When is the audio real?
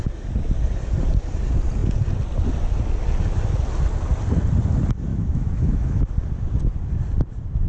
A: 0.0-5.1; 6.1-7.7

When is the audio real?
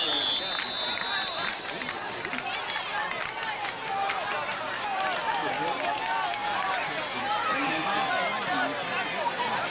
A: 0.0-9.7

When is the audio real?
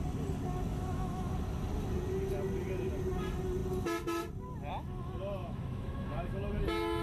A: 0.0-0.7; 1.3-5.4; 6.5-7.0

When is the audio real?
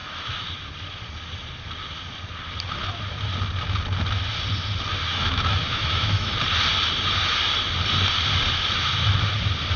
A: 0.5-5.0; 6.3-9.8